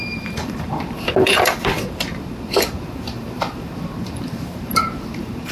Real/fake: fake